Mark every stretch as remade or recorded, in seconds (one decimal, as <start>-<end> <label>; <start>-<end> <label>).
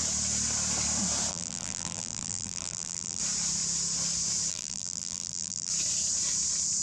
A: 0.0-1.3 recorded; 1.3-3.2 remade; 3.2-4.5 recorded; 4.5-5.7 remade; 5.7-6.8 recorded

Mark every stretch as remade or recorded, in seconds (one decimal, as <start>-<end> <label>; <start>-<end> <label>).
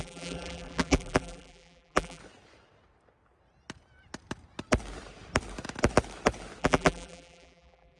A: 0.0-2.2 remade; 2.2-6.6 recorded; 6.6-8.0 remade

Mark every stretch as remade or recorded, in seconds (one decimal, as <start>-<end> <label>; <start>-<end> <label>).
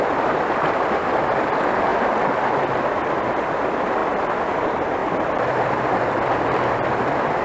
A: 0.0-1.9 remade; 1.9-3.0 recorded; 3.0-5.0 remade; 5.0-5.5 recorded; 5.5-7.4 remade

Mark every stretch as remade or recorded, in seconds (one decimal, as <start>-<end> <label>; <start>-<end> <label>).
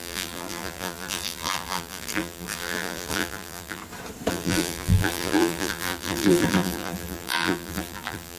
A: 0.0-3.8 remade; 3.8-4.3 recorded; 4.3-8.4 remade